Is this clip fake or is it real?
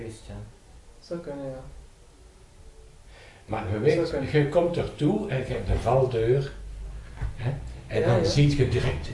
real